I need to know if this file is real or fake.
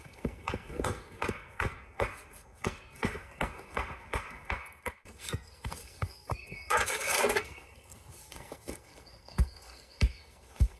fake